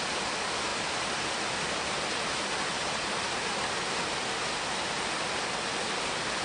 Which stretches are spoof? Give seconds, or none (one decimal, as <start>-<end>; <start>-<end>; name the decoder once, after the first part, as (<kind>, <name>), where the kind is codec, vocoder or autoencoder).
none